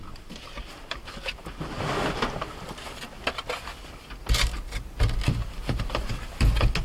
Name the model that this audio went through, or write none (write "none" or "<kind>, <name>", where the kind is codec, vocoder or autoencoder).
none